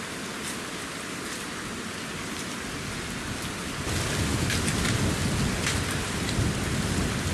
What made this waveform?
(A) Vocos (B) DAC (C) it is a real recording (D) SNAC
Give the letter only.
C